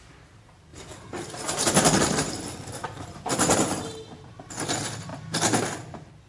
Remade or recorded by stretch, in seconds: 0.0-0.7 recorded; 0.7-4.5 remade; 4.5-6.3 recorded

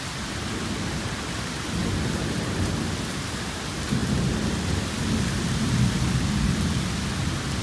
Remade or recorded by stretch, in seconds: 0.0-7.6 recorded

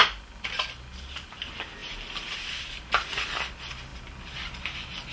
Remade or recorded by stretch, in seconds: 0.0-5.1 recorded

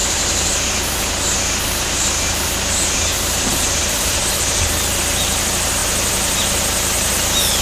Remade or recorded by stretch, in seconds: 0.0-4.2 remade; 4.2-5.0 recorded; 5.0-7.6 remade

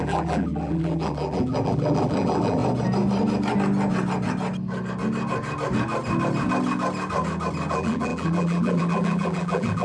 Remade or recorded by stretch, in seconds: 0.0-2.6 remade; 2.6-7.7 recorded; 7.7-9.8 remade